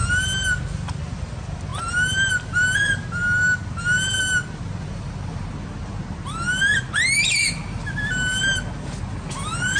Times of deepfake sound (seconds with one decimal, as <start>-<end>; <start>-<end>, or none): none